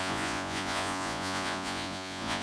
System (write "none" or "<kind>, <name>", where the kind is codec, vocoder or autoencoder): vocoder, Vocos